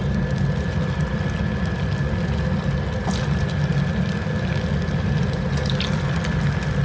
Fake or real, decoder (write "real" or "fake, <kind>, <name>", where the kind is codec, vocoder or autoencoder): real